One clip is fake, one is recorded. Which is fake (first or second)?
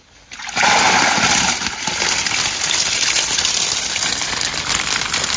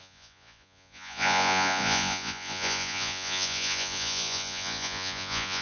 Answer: second